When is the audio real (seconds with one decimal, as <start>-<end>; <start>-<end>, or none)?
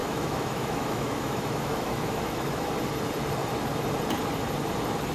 2.7-5.1